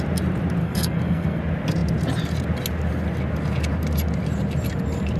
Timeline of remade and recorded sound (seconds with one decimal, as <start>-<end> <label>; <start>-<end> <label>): 0.0-0.6 recorded; 0.6-1.4 remade; 1.4-5.2 recorded